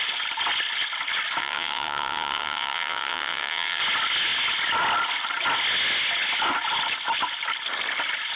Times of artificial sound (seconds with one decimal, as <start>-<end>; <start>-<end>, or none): 1.4-3.8